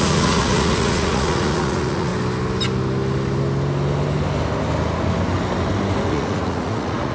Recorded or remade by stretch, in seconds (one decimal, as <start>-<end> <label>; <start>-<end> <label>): 0.0-2.1 remade; 2.1-6.1 recorded; 6.1-7.1 remade